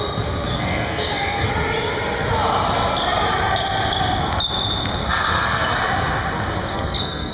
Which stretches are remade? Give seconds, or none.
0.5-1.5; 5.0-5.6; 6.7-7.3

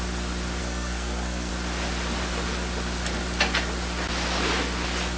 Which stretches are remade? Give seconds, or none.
0.6-1.5

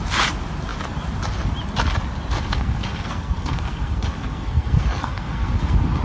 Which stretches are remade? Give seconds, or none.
2.3-6.0